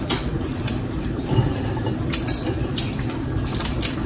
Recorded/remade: recorded